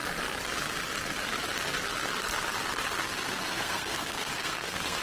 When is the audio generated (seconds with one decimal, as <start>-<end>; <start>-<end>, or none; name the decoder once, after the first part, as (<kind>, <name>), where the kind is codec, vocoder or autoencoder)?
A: 3.4-5.0 (codec, SNAC)